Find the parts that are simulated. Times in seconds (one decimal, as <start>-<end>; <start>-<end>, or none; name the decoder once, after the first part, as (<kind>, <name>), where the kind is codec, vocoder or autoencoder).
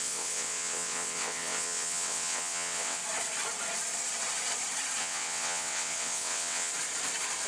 0.0-3.0 (vocoder, WaveNeXt); 5.0-6.7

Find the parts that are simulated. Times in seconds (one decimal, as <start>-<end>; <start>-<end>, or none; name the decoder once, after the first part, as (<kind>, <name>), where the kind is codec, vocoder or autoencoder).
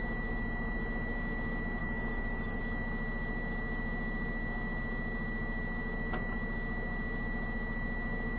1.8-2.6 (codec, DAC)